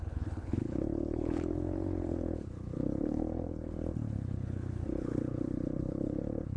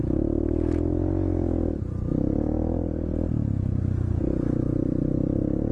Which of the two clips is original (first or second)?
second